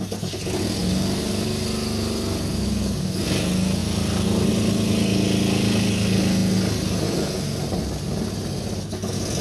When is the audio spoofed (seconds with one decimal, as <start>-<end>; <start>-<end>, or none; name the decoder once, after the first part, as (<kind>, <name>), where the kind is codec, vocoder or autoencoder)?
0.8-1.6 (codec, DAC); 2.5-3.2